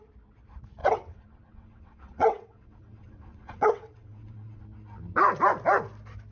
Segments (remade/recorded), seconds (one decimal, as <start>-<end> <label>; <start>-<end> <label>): 0.0-0.8 recorded; 0.8-4.6 remade; 4.6-6.3 recorded